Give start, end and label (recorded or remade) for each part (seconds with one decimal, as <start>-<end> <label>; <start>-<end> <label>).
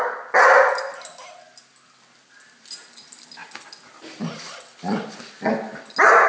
0.0-6.3 recorded